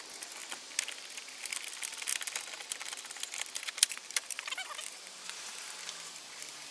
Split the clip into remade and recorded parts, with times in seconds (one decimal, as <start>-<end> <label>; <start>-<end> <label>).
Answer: 0.0-0.4 remade; 0.4-1.0 recorded; 1.0-6.7 remade